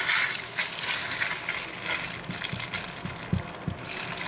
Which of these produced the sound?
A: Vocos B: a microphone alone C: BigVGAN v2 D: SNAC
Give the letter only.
B